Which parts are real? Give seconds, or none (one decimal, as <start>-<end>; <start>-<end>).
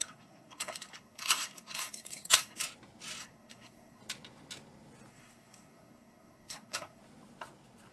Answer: 2.6-3.2; 4.0-5.1; 7.0-7.9